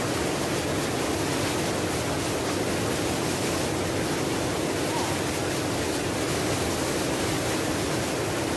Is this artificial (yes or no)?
no